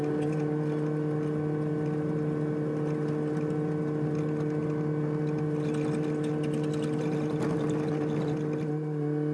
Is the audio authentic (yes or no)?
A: yes